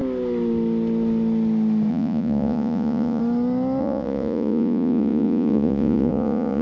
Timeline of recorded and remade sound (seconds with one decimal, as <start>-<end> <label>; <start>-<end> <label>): 0.0-1.9 recorded; 1.9-3.2 remade; 3.2-3.8 recorded; 3.8-6.6 remade